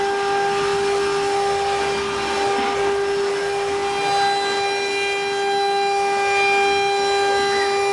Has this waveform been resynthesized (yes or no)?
no